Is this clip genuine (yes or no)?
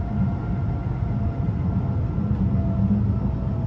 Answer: yes